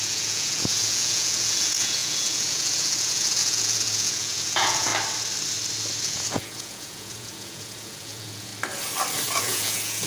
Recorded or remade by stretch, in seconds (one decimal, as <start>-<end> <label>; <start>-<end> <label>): 0.0-4.9 remade; 4.9-6.0 recorded; 6.0-8.5 remade; 8.5-9.4 recorded; 9.4-10.1 remade